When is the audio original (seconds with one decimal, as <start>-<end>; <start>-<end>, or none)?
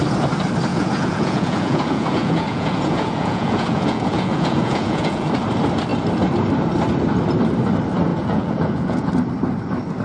0.0-0.7; 5.3-8.1; 9.1-10.0